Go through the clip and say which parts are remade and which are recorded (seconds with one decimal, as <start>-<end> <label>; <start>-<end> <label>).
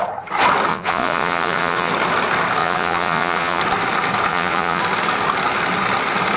0.0-0.7 recorded; 0.7-1.9 remade; 1.9-2.6 recorded; 2.6-3.6 remade; 3.6-4.3 recorded; 4.3-4.8 remade; 4.8-6.4 recorded